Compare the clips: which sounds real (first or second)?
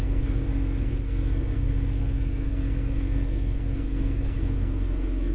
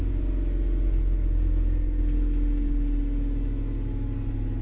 second